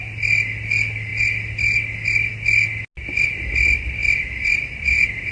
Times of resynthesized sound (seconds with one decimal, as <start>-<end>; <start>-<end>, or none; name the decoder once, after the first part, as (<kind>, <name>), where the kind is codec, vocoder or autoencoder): none